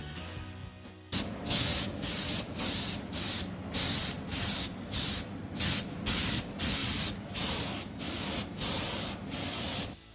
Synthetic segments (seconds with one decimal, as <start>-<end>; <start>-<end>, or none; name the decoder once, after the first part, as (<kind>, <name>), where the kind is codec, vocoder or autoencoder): none